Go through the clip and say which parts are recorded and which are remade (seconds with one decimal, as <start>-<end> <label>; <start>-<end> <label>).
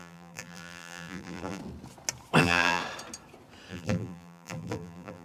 0.0-1.6 remade; 1.6-2.4 recorded; 2.4-2.8 remade; 2.8-3.7 recorded; 3.7-5.2 remade